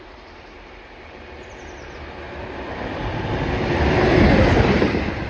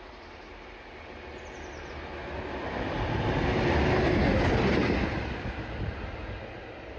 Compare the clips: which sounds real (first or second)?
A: second